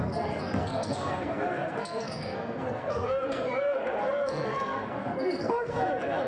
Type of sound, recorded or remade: remade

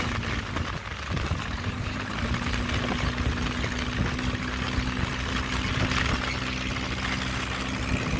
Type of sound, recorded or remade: recorded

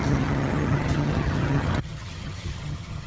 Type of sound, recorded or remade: remade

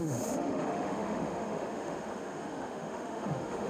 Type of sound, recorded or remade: remade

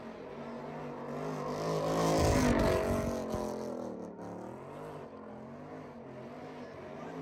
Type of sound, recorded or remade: recorded